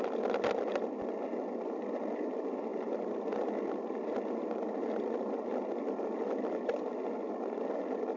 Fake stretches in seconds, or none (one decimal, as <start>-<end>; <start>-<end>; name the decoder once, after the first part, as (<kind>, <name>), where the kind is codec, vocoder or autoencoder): 2.7-3.5 (vocoder, BigVGAN v2); 4.8-6.2